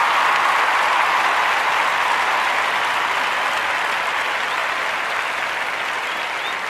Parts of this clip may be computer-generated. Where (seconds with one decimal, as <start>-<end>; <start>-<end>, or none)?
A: none